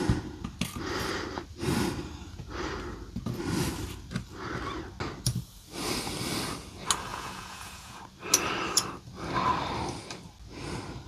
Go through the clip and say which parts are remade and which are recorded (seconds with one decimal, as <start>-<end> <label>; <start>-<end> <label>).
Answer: 0.0-7.1 recorded; 7.1-8.0 remade; 8.0-11.1 recorded